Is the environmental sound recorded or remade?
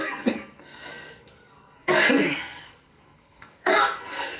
remade